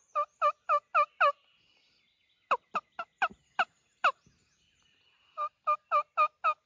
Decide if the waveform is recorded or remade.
recorded